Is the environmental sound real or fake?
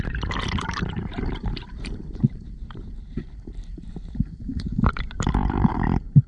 fake